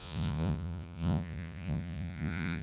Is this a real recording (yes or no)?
no